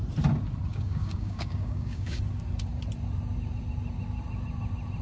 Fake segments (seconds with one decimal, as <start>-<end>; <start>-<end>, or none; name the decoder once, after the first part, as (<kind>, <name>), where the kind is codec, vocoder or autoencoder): 0.7-2.2 (codec, DAC)